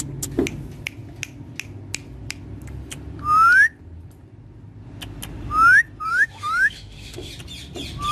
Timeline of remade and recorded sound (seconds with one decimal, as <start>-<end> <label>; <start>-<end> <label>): 0.0-6.1 recorded; 6.1-7.3 remade; 7.3-8.1 recorded